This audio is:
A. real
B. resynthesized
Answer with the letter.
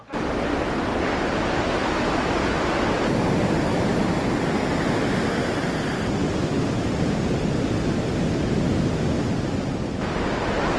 A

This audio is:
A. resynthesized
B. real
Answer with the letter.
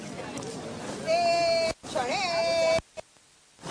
B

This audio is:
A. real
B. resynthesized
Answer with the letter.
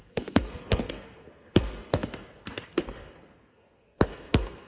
B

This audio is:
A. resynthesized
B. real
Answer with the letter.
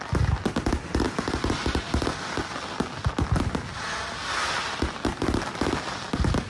B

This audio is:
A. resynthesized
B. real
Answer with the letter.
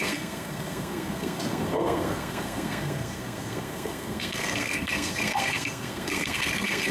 A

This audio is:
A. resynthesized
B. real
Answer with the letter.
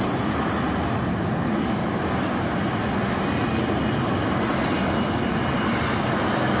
B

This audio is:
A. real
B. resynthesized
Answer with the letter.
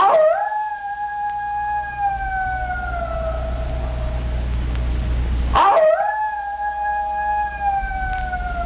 A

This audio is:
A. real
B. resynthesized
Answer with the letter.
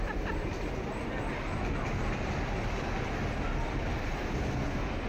A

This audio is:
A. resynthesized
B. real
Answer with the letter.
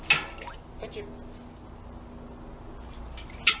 B